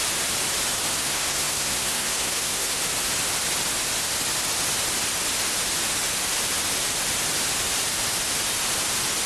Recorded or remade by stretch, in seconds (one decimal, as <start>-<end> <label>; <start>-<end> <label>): 0.0-0.9 recorded; 0.9-2.8 remade; 2.8-9.3 recorded